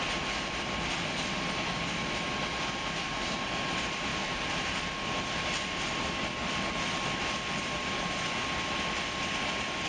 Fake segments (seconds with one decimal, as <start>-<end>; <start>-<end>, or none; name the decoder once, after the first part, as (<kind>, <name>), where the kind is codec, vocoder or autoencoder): 4.1-4.8 (vocoder, BigVGAN v2)